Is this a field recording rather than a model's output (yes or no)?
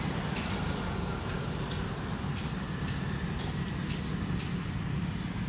yes